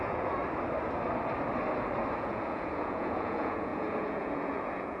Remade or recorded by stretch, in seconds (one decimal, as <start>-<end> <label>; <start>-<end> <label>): 0.0-0.4 remade; 0.4-2.2 recorded; 2.2-5.0 remade